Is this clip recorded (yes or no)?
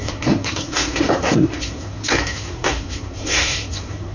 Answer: no